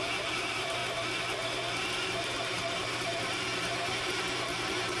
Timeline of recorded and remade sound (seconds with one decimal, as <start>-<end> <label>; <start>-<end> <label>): 0.0-0.8 remade; 0.8-1.9 recorded; 1.9-5.0 remade